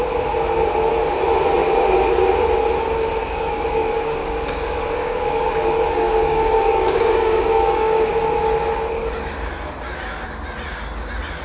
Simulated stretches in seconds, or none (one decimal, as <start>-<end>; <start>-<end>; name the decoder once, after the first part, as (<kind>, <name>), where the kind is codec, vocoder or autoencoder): 3.2-8.1 (codec, DAC)